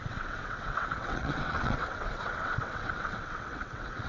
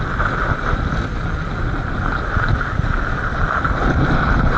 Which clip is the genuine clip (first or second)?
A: second